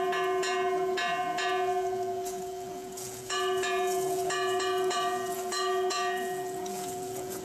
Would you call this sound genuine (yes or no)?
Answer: no